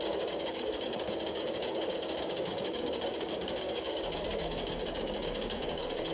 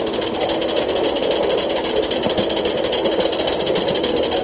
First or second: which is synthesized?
first